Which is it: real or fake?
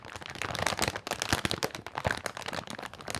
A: real